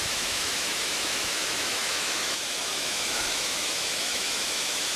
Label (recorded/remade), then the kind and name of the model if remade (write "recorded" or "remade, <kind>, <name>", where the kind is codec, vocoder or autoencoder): remade, autoencoder, DAC-VAE